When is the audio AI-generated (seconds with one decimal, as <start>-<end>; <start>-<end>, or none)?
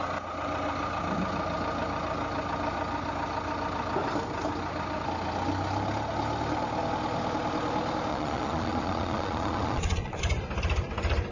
8.1-10.2